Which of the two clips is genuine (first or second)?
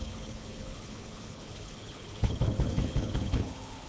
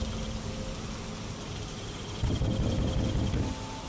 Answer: second